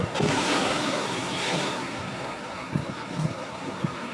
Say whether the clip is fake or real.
fake